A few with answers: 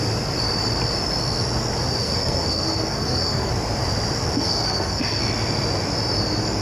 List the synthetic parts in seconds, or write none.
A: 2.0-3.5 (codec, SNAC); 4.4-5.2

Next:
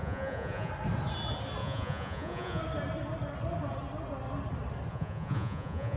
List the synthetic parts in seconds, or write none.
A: 0.0-0.7 (vocoder, Vocos); 1.6-2.6; 4.9-6.0

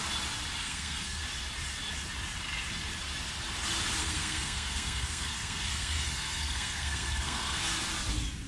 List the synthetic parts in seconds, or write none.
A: 0.6-1.2 (codec, SNAC); 4.0-7.6

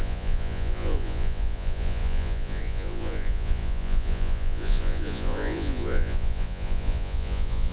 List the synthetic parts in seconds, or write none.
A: 0.0-7.7 (vocoder, Vocos)

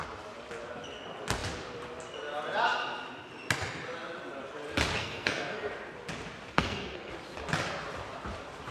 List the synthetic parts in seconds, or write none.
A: 5.0-5.7 (codec, SNAC); 6.5-7.1

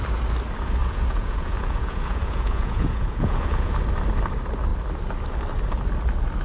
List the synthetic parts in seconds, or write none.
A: 0.8-3.8 (vocoder, Vocos)